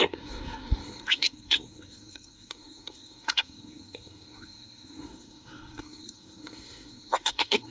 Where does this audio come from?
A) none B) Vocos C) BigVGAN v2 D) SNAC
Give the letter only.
D